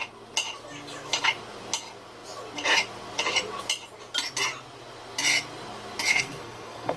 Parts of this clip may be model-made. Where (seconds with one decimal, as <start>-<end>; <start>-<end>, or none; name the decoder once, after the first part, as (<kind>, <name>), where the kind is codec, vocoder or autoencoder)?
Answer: 6.1-7.0 (codec, SNAC)